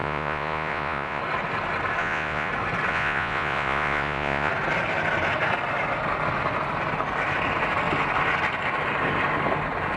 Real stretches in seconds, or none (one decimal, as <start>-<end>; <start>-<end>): 1.2-2.0; 2.5-2.9; 4.5-10.0